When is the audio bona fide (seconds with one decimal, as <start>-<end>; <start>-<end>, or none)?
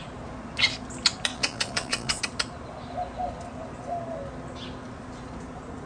0.0-1.3; 2.2-5.9